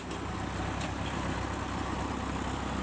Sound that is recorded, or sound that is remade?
recorded